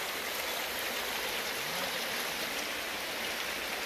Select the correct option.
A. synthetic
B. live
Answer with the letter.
B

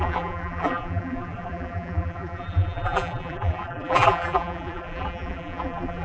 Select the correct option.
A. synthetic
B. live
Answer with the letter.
A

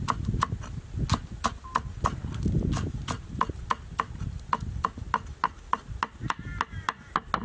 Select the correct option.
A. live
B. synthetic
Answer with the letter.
A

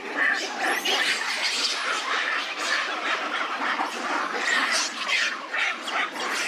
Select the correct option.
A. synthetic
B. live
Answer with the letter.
B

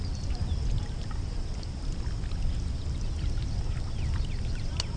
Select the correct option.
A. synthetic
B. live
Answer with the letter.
B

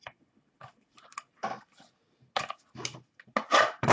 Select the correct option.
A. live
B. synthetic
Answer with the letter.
A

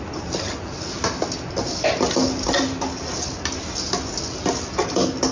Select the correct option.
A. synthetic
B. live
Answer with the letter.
B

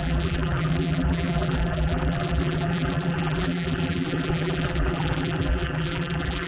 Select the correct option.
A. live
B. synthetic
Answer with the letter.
B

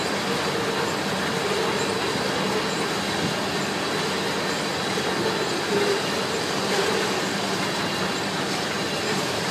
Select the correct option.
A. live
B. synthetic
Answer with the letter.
A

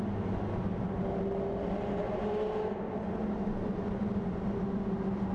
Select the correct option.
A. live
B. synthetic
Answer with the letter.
A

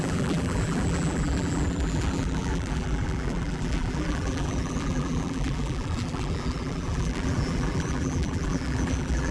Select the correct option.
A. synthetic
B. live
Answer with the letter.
A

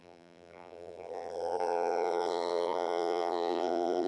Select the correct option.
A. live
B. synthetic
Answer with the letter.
B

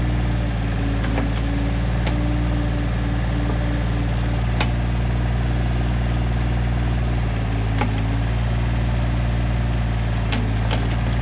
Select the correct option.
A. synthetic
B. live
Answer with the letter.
B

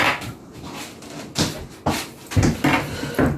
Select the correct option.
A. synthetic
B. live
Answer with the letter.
B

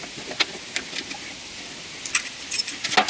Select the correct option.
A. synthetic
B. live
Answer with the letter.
B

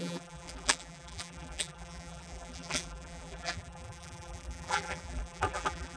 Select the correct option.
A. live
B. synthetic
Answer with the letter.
B